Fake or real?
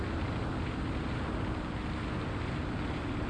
real